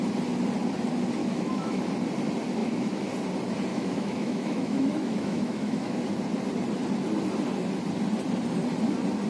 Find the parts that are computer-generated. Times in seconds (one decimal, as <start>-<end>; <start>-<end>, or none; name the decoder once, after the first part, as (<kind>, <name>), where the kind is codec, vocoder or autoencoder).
1.2-1.8 (autoencoder, DAC-VAE); 2.6-3.1; 3.7-6.0